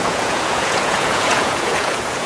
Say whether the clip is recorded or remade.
remade